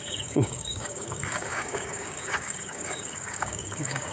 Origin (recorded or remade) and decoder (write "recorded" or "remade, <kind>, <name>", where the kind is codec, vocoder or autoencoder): remade, codec, DAC